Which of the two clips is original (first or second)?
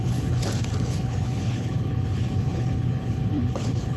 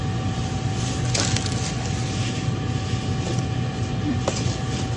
second